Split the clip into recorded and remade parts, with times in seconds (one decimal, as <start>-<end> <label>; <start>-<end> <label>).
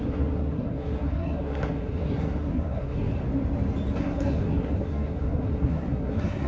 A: 0.0-3.1 remade; 3.1-4.0 recorded; 4.0-6.5 remade